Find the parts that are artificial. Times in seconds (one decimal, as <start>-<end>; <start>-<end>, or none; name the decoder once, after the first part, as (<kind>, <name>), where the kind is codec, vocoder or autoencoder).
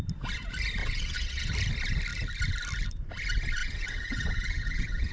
0.8-1.5 (vocoder, WaveNeXt); 3.6-5.1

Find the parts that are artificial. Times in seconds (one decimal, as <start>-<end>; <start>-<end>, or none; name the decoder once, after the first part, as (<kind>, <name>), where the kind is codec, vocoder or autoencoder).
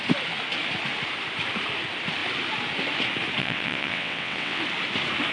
3.4-4.6 (vocoder, WaveNeXt)